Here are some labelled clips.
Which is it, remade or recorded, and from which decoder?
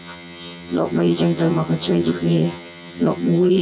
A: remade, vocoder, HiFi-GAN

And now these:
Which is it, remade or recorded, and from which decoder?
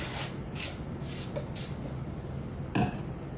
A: recorded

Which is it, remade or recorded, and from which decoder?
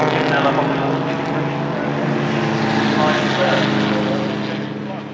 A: recorded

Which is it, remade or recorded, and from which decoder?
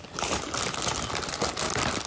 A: recorded